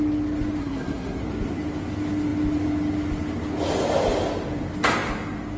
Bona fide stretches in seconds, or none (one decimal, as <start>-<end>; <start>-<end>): 0.0-0.6; 1.2-5.6